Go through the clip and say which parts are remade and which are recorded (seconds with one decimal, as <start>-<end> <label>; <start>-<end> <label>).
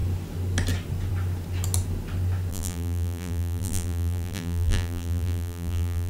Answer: 0.0-2.5 recorded; 2.5-6.1 remade